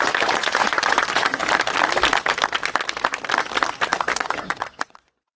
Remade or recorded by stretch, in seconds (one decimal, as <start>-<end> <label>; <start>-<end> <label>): 0.0-1.4 remade; 1.4-4.2 recorded; 4.2-5.4 remade

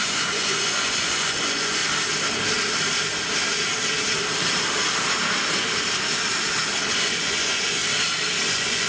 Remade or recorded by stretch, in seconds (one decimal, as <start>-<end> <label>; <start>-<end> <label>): 0.0-1.8 remade; 1.8-6.9 recorded; 6.9-7.8 remade; 7.8-8.5 recorded; 8.5-8.9 remade

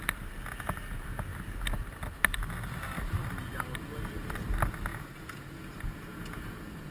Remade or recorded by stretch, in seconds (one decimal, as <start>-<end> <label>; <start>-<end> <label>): 0.0-4.9 recorded; 4.9-6.9 remade

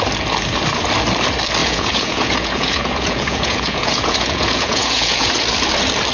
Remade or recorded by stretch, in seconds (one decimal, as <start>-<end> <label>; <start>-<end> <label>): 0.0-1.6 recorded; 1.6-5.3 remade; 5.3-6.1 recorded

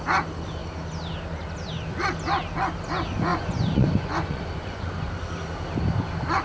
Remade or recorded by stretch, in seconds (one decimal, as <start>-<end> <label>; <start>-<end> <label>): 0.0-3.3 recorded; 3.3-5.1 remade; 5.1-6.4 recorded

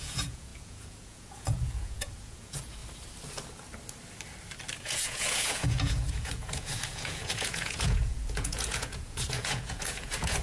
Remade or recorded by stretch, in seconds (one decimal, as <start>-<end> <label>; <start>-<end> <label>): 0.0-2.8 remade; 2.8-4.8 recorded; 4.8-10.4 remade

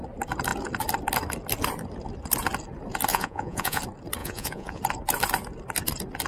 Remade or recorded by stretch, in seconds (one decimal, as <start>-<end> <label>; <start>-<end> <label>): 0.0-3.1 recorded; 3.1-3.8 remade; 3.8-4.2 recorded; 4.2-4.8 remade; 4.8-6.3 recorded